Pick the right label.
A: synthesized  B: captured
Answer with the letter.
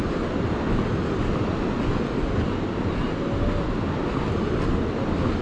B